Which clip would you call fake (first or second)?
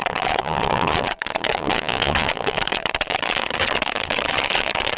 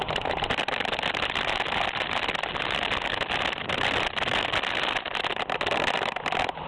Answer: first